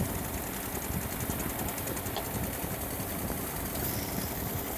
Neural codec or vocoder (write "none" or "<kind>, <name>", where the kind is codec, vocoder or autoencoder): none